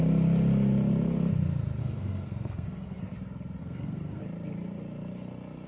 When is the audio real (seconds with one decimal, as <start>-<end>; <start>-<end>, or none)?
0.0-1.8; 3.0-3.6; 4.2-5.7